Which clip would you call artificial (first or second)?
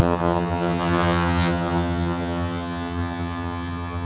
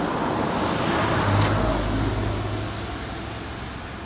first